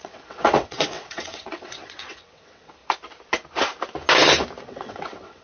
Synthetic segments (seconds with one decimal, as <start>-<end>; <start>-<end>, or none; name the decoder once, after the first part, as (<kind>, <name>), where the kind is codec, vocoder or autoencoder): 0.0-2.8 (vocoder, WaveNeXt); 4.6-5.4